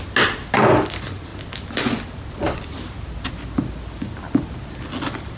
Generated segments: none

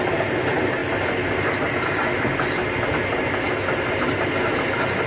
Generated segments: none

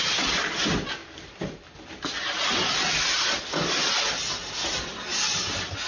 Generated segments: none

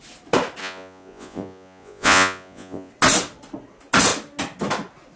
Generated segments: 0.6-2.9 (vocoder, Vocos)